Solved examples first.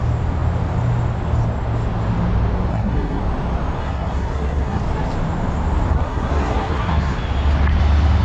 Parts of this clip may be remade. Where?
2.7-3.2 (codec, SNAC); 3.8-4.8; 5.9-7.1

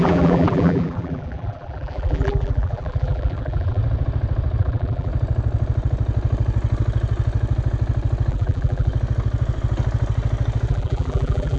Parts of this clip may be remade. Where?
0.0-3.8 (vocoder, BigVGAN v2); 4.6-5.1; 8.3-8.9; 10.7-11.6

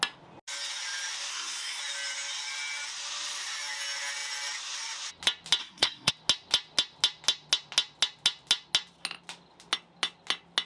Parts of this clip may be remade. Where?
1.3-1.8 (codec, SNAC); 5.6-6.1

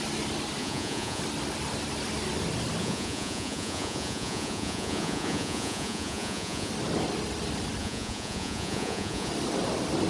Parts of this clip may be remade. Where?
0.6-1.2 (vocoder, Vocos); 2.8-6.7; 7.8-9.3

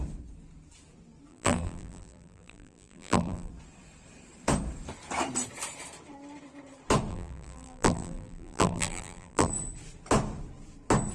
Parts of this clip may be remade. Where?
1.3-3.5 (vocoder, BigVGAN v2); 7.1-9.5

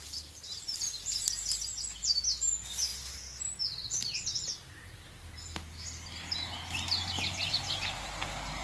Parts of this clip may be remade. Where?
none